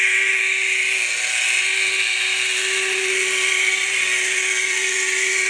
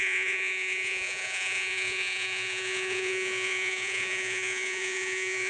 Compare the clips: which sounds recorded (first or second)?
first